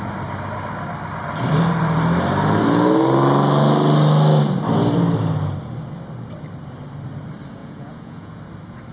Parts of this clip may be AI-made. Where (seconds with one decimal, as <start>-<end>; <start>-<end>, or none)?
7.6-8.4